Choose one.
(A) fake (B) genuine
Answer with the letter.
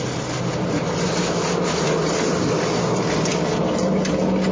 B